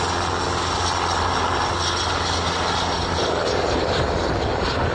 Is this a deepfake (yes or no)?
no